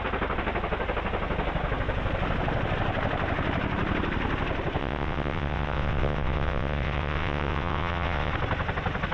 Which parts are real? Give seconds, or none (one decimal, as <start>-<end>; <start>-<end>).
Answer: 0.0-4.8; 8.3-9.1